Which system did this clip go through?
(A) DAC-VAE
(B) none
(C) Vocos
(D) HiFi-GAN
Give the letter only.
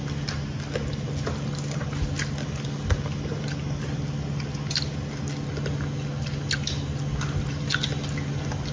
B